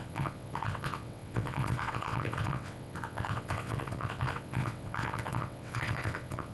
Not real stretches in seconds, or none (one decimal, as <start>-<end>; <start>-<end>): 0.0-6.5